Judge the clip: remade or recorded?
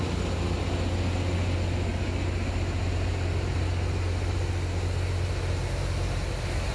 recorded